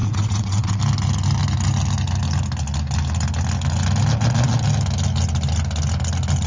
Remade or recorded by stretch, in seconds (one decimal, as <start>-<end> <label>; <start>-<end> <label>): 0.0-0.8 remade; 0.8-6.5 recorded